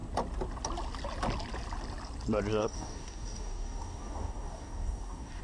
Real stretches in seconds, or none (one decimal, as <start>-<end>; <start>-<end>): 0.0-2.6